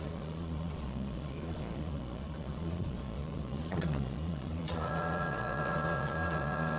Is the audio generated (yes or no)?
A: yes